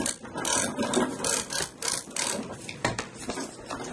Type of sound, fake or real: real